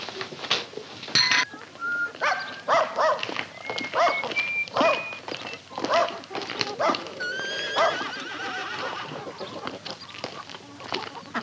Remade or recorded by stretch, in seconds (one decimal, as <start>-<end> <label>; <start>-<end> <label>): 0.0-1.8 recorded; 1.8-3.4 remade; 3.4-6.0 recorded; 6.0-7.0 remade; 7.0-8.6 recorded; 8.6-10.0 remade; 10.0-11.4 recorded